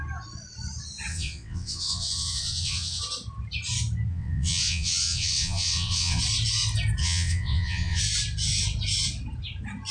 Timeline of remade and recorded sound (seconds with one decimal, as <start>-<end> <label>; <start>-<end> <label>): 0.0-1.1 recorded; 1.1-3.0 remade; 3.0-4.1 recorded; 4.1-6.2 remade; 6.2-7.0 recorded; 7.0-8.0 remade; 8.0-9.9 recorded